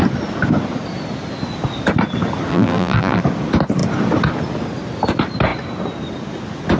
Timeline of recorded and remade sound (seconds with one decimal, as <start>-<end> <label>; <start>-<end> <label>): 0.0-2.5 recorded; 2.5-3.2 remade; 3.2-6.8 recorded